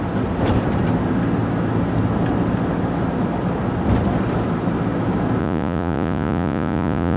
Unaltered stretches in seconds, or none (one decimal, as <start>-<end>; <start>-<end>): 0.0-5.4